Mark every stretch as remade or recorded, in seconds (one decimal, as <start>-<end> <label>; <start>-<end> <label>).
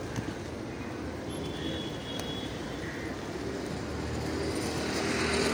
0.0-2.0 recorded; 2.0-2.9 remade; 2.9-5.5 recorded